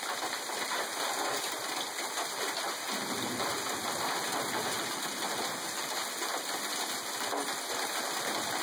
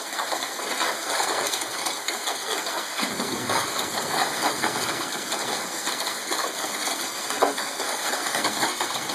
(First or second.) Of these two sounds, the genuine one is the first